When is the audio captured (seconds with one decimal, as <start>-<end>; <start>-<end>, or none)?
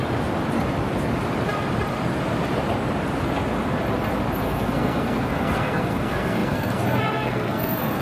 0.0-4.4